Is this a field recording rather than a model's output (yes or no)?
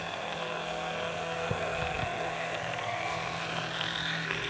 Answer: no